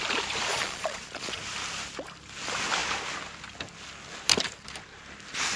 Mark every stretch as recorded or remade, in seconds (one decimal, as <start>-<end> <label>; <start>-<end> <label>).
0.0-0.5 recorded; 0.5-1.4 remade; 1.4-5.6 recorded